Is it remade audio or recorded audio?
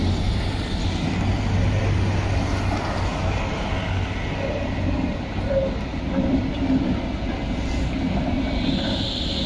recorded